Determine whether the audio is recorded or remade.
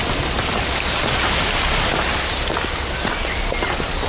recorded